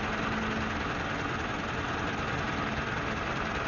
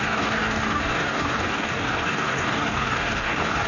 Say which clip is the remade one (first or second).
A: second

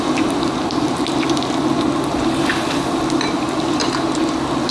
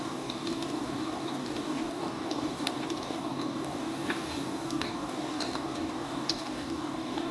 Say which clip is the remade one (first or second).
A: second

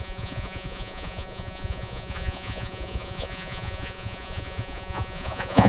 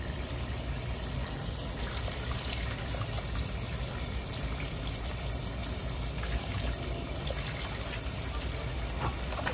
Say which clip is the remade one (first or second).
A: first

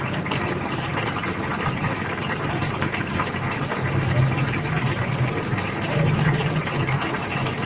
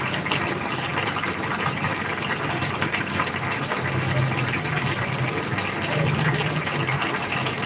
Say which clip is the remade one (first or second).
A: first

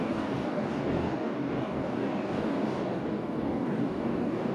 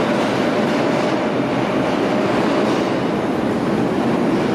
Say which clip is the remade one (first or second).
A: first